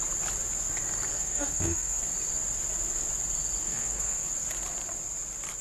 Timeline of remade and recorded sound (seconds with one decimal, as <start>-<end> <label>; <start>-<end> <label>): 0.0-1.1 recorded; 1.1-2.1 remade; 2.1-3.6 recorded; 3.6-4.3 remade; 4.3-5.6 recorded